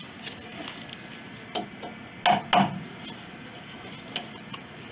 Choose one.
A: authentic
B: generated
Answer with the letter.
A